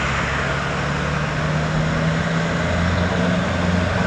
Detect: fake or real real